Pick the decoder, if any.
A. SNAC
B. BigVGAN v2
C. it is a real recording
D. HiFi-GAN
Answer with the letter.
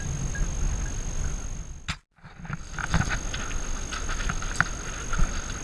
C